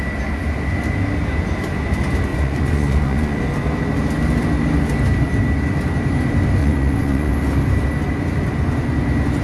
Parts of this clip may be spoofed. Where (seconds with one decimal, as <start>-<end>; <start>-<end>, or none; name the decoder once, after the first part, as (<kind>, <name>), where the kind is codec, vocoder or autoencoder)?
2.3-3.4 (vocoder, Vocos); 6.6-7.3